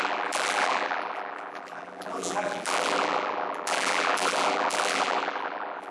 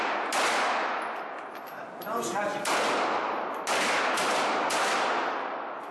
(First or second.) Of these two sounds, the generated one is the first